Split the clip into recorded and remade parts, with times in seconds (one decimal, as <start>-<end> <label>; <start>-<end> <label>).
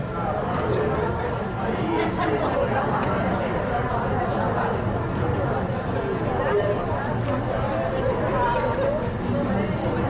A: 0.0-10.1 recorded